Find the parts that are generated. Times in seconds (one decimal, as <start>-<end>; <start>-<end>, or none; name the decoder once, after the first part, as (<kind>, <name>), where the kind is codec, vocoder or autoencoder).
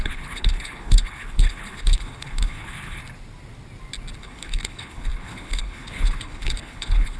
0.0-3.0 (codec, HILCodec); 4.2-7.2